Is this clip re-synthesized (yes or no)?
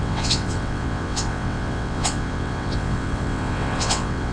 yes